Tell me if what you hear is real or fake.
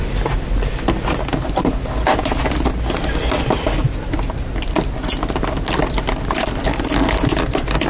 real